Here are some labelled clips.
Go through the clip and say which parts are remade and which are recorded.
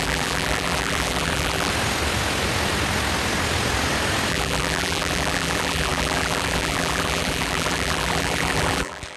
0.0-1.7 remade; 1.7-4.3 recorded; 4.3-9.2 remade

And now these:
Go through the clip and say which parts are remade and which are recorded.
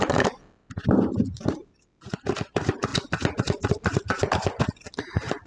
0.0-0.6 remade; 0.6-1.1 recorded; 1.1-2.9 remade; 2.9-3.7 recorded; 3.7-5.5 remade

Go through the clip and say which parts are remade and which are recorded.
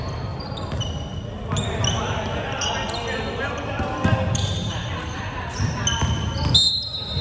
0.0-4.1 recorded; 4.1-5.8 remade; 5.8-7.2 recorded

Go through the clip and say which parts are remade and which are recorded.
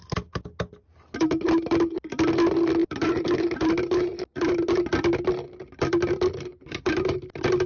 0.0-2.8 recorded; 2.8-4.8 remade; 4.8-6.5 recorded; 6.5-7.2 remade; 7.2-7.7 recorded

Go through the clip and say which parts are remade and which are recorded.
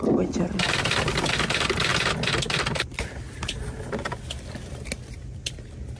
0.0-6.0 recorded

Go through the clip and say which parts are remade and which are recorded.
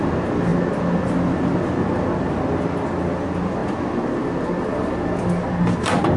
0.0-6.2 recorded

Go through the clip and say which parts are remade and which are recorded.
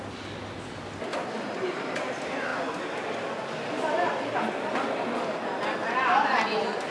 0.0-1.1 recorded; 1.1-2.0 remade; 2.0-5.8 recorded; 5.8-6.9 remade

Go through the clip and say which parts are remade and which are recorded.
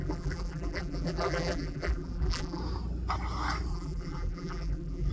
0.0-2.6 remade; 2.6-3.7 recorded; 3.7-5.1 remade